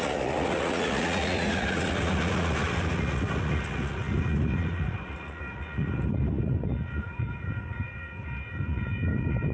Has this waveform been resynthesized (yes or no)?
yes